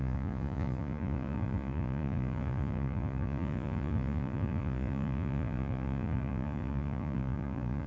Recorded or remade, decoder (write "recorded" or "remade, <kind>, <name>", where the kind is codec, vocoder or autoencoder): remade, vocoder, Vocos